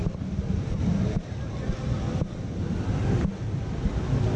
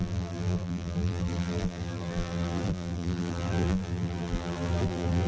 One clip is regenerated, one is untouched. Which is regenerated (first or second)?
second